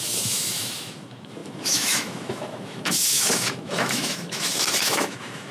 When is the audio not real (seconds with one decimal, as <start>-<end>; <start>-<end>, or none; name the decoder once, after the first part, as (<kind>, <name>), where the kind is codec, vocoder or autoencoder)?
0.0-5.5 (autoencoder, DAC-VAE)